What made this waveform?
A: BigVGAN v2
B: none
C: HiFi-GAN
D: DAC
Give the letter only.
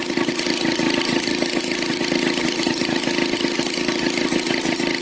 B